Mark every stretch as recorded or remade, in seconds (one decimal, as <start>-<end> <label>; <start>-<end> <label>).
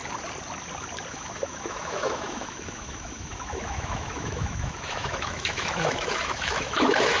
0.0-1.1 recorded; 1.1-7.2 remade